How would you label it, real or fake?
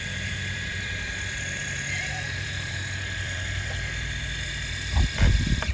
fake